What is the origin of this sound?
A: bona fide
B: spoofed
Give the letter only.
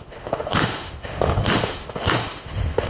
B